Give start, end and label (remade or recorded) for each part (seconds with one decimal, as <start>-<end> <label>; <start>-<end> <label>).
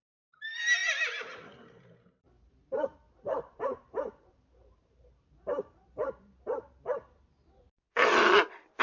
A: 0.0-0.8 recorded; 0.8-6.1 remade; 6.1-8.8 recorded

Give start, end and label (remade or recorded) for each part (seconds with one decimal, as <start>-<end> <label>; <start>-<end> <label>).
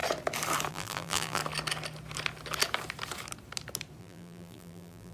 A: 0.0-0.7 recorded; 0.7-1.4 remade; 1.4-4.0 recorded; 4.0-5.1 remade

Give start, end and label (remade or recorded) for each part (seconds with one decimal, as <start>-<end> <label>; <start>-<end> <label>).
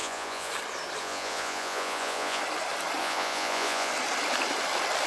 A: 0.0-0.5 remade; 0.5-1.0 recorded; 1.0-2.4 remade; 2.4-3.0 recorded; 3.0-3.9 remade; 3.9-5.1 recorded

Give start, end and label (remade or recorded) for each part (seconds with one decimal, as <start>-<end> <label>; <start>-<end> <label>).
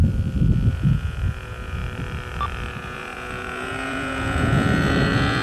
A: 0.0-0.7 recorded; 0.7-1.8 remade; 1.8-2.7 recorded; 2.7-5.4 remade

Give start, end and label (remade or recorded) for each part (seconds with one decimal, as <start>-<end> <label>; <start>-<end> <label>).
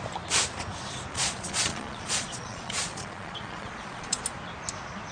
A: 0.0-1.1 recorded; 1.1-4.2 remade; 4.2-5.1 recorded